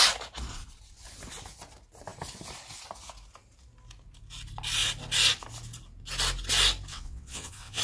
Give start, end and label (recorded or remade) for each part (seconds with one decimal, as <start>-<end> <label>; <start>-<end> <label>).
0.0-6.9 recorded; 6.9-7.8 remade

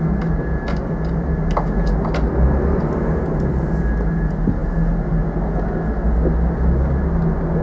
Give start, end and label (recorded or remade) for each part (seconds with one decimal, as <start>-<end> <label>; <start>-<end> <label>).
0.0-7.6 recorded

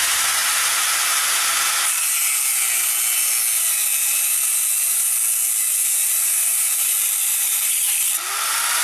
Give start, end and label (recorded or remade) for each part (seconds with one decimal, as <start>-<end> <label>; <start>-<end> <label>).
0.0-8.8 recorded

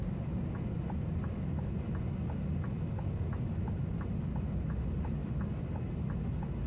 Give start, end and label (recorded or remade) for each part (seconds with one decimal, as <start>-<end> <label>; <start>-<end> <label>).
0.0-6.7 recorded

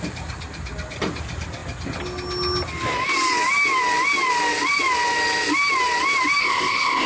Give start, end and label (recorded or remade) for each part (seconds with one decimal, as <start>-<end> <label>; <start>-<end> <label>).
0.0-6.4 recorded; 6.4-7.1 remade

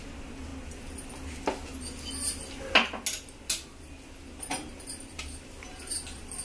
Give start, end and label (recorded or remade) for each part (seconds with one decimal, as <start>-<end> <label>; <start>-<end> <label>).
0.0-6.4 recorded

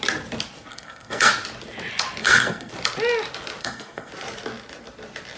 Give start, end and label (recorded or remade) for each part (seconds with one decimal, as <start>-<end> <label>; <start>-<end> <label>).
0.0-0.7 recorded; 0.7-1.3 remade; 1.3-2.2 recorded; 2.2-2.7 remade; 2.7-3.6 recorded; 3.6-4.1 remade; 4.1-5.4 recorded

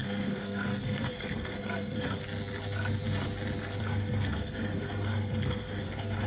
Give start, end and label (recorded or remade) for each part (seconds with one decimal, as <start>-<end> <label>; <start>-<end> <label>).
0.0-2.2 remade; 2.2-3.8 recorded; 3.8-6.3 remade